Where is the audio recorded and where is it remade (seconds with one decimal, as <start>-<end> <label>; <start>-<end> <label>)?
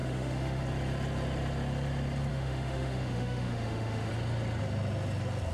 0.0-0.6 remade; 0.6-2.3 recorded; 2.3-4.1 remade; 4.1-5.5 recorded